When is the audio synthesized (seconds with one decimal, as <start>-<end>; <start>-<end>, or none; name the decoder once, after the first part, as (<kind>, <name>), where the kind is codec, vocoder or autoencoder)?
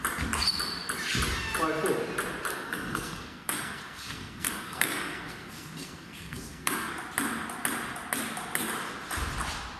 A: 2.5-6.9 (codec, SNAC)